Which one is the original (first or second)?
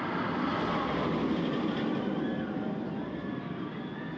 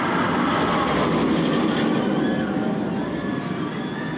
second